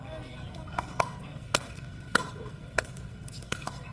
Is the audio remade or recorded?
remade